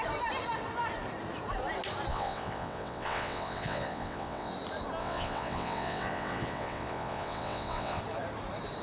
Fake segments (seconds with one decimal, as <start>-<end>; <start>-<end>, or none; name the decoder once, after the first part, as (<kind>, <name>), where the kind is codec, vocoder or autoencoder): 2.1-4.5 (vocoder, WaveNeXt); 5.0-8.0